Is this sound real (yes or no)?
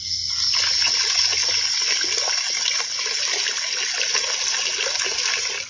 yes